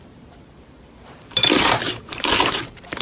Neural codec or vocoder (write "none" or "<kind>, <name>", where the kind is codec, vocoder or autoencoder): vocoder, BigVGAN v2